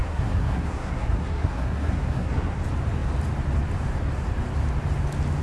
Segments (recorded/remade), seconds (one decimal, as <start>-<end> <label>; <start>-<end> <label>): 0.0-2.6 remade; 2.6-5.4 recorded